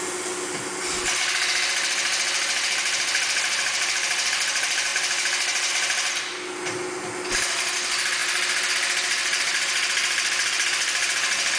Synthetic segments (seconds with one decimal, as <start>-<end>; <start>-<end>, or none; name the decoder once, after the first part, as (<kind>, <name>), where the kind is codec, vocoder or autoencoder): none